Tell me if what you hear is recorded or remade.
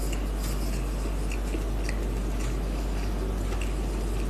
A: recorded